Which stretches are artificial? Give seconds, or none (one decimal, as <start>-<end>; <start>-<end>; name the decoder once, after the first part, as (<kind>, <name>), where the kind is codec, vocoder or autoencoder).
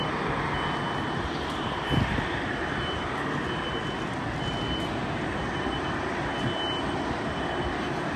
none